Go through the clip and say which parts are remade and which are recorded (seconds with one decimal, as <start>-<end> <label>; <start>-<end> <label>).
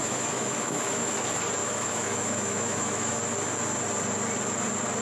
0.0-1.1 remade; 1.1-1.6 recorded; 1.6-3.2 remade; 3.2-5.0 recorded